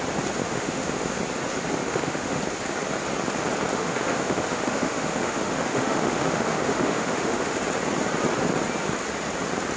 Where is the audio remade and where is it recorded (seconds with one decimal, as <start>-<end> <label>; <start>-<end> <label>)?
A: 0.0-0.4 recorded; 0.4-1.2 remade; 1.2-1.8 recorded; 1.8-2.4 remade; 2.4-3.7 recorded; 3.7-7.6 remade; 7.6-9.8 recorded